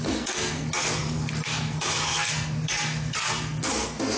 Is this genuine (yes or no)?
no